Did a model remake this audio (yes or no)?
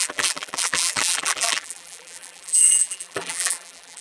yes